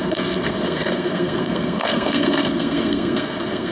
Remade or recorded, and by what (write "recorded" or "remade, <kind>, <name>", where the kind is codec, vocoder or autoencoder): remade, codec, SNAC